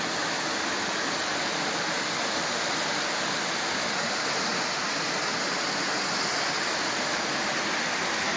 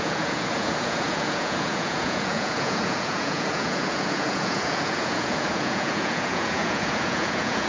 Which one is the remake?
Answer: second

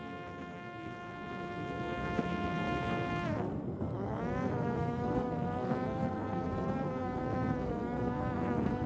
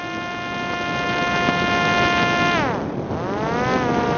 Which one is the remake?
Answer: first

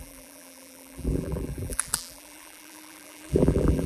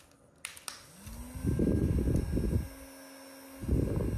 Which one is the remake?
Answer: first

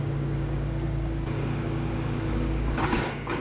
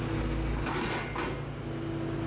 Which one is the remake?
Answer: first